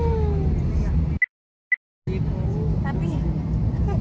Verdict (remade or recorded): recorded